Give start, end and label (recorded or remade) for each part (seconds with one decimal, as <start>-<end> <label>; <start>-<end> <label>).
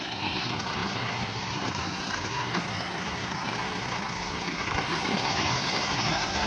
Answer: 0.0-6.5 remade